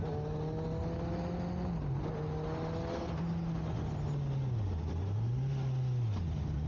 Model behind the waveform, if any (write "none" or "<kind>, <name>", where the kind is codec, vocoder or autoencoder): none